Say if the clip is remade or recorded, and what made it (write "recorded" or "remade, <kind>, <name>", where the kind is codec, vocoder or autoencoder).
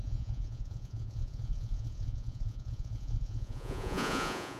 remade, vocoder, Vocos